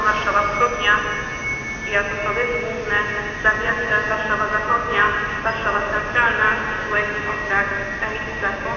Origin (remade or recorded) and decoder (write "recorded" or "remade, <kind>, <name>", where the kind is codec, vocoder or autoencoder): recorded